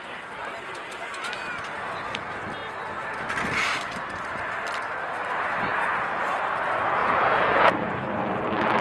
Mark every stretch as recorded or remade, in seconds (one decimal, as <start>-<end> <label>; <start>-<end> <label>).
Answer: 0.0-5.7 recorded; 5.7-6.2 remade; 6.2-7.0 recorded; 7.0-8.0 remade; 8.0-8.8 recorded